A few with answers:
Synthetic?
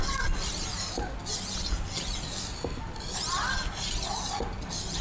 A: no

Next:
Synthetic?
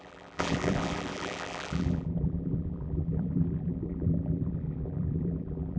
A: yes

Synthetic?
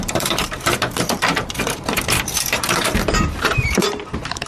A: yes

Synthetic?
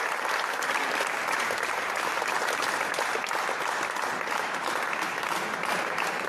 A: no